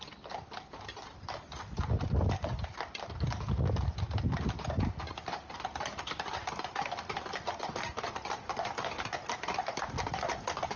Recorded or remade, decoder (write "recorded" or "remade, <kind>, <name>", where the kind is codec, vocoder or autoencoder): recorded